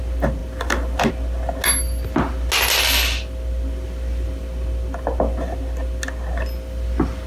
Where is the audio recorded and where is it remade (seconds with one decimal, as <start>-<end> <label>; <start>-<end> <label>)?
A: 0.0-7.3 recorded